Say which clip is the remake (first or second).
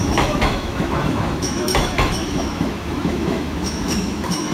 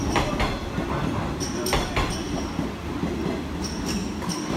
first